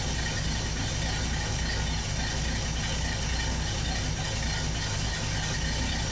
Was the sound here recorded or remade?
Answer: recorded